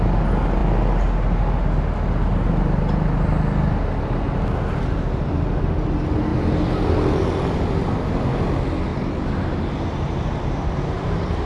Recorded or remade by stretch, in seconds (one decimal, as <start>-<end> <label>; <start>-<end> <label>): 0.0-8.9 recorded; 8.9-11.5 remade